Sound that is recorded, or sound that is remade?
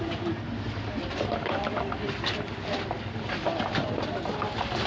recorded